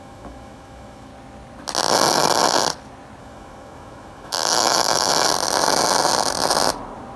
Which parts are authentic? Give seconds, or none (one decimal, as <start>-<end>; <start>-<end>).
1.1-3.2; 5.1-7.2